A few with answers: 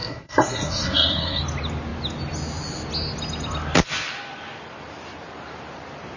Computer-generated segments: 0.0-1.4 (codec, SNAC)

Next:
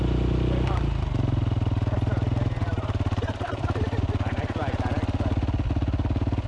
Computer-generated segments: 2.6-4.0 (vocoder, BigVGAN v2)

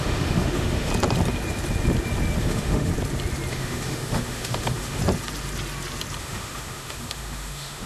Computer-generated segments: 0.0-0.9 (autoencoder, DAC-VAE); 2.4-2.9; 3.5-5.0; 6.2-7.9

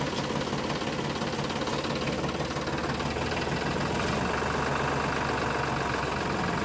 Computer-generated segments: none

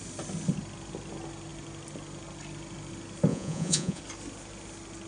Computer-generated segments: 3.3-4.0 (vocoder, Vocos)

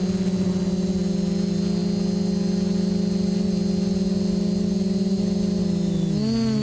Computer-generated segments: none

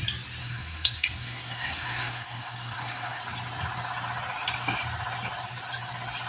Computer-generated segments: 0.4-3.2 (codec, SNAC)

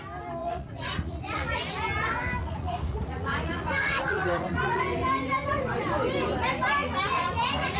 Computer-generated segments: 0.4-1.6 (vocoder, Vocos); 2.4-4.8; 6.8-7.8